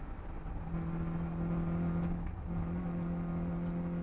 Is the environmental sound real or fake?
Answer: real